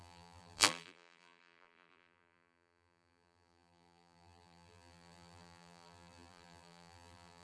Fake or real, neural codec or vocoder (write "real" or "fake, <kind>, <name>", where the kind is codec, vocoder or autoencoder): fake, vocoder, BigVGAN v2